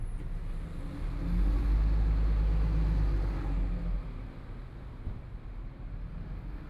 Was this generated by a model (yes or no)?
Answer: no